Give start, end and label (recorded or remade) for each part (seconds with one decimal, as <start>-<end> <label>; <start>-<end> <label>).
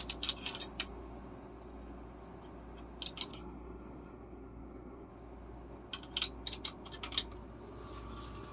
0.0-3.3 recorded; 3.3-5.1 remade; 5.1-8.5 recorded